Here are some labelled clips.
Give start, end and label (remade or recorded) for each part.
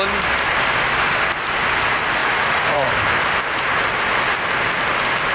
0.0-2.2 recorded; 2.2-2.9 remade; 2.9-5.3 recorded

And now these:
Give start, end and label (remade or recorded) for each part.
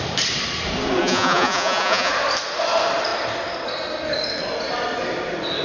0.0-1.0 recorded; 1.0-2.1 remade; 2.1-5.6 recorded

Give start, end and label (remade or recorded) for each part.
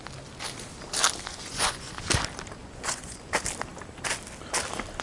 0.0-1.3 recorded; 1.3-2.0 remade; 2.0-2.6 recorded; 2.6-3.2 remade; 3.2-5.0 recorded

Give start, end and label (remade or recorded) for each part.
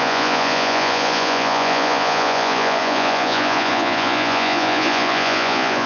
0.0-5.9 remade